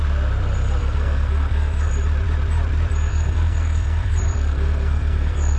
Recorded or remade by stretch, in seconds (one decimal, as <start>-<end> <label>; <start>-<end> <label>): 0.0-0.8 recorded; 0.8-1.9 remade; 1.9-3.1 recorded; 3.1-5.6 remade